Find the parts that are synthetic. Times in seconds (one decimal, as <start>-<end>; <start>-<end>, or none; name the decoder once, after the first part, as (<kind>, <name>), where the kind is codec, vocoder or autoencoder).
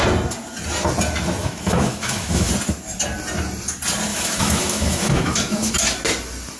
1.4-2.5 (autoencoder, DAC-VAE); 4.1-5.7